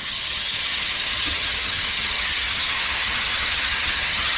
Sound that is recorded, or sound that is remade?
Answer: remade